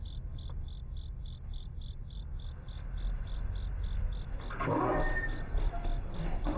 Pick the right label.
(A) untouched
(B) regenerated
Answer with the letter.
A